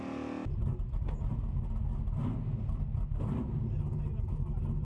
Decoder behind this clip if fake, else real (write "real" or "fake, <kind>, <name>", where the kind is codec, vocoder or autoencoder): real